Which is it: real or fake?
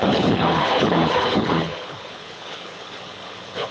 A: fake